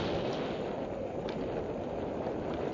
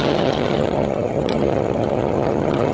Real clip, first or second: first